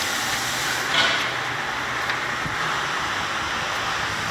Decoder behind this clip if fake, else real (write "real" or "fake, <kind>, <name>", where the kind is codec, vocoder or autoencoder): real